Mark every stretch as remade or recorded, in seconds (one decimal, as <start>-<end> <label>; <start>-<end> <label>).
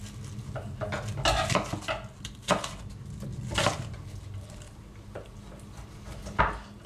0.0-6.9 recorded